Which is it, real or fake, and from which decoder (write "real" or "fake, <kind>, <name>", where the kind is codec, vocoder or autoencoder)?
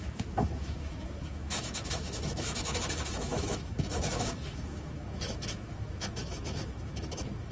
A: fake, autoencoder, DAC-VAE